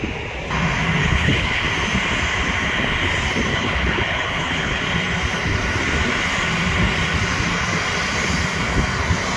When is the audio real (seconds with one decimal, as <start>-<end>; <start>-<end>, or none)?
0.0-1.0; 1.6-3.5; 4.8-9.4